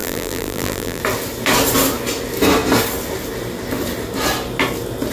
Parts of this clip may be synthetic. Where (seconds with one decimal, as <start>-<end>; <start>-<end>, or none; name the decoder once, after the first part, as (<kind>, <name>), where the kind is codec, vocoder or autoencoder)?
0.0-1.0 (vocoder, BigVGAN v2)